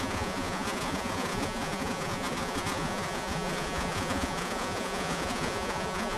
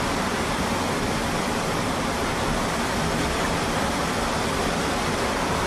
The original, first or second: second